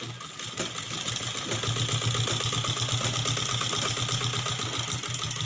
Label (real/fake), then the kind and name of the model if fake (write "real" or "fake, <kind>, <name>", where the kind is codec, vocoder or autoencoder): real